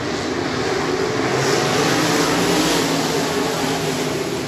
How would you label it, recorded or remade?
recorded